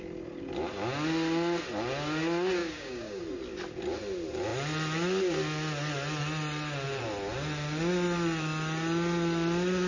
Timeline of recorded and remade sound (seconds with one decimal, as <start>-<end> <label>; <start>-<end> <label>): 0.0-2.6 recorded; 2.6-3.2 remade; 3.2-9.9 recorded